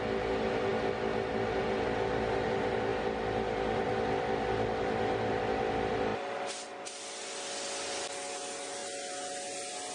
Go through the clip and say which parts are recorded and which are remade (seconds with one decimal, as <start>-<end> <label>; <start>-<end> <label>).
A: 0.0-9.9 recorded